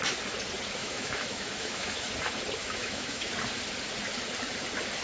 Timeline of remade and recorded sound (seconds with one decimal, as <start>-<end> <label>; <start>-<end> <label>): 0.0-0.8 recorded; 0.8-2.1 remade; 2.1-2.6 recorded; 2.6-3.3 remade; 3.3-5.0 recorded